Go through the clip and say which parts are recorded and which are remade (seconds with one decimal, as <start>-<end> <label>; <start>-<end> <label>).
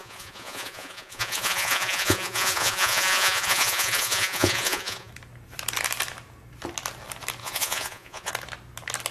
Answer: 0.0-5.1 remade; 5.1-7.4 recorded; 7.4-8.3 remade; 8.3-9.1 recorded